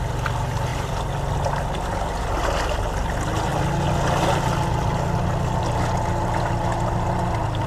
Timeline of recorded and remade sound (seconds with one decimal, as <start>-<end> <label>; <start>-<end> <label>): 0.0-7.7 recorded